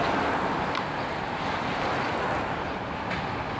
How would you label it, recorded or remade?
recorded